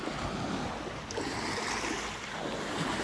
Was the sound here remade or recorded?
recorded